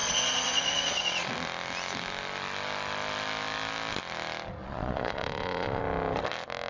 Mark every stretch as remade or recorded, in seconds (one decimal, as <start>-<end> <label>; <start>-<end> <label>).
0.0-1.3 remade; 1.3-4.6 recorded; 4.6-5.8 remade; 5.8-6.7 recorded